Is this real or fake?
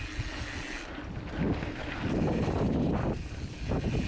real